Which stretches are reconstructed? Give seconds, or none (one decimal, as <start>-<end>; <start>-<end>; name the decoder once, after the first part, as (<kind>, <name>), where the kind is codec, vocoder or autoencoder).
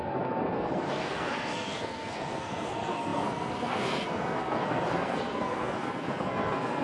0.0-6.8 (codec, SNAC)